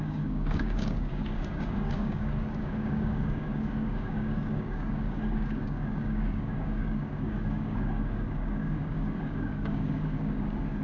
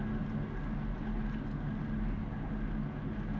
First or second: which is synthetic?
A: first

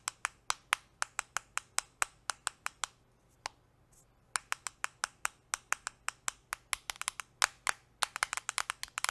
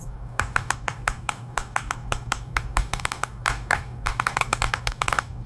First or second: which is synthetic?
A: second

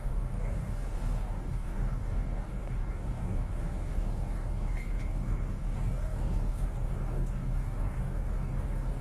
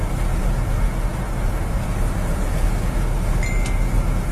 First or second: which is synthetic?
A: first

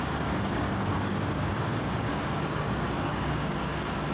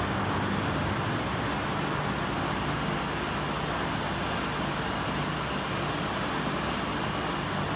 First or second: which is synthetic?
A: first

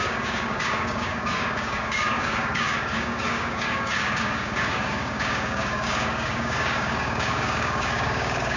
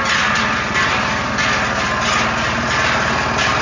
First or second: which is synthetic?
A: first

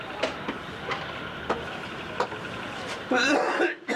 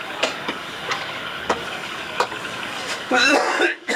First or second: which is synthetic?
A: second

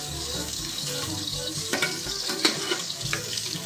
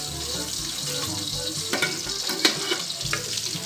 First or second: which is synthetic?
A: first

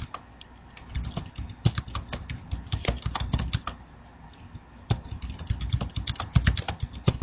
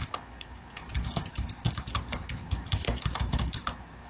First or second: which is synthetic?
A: second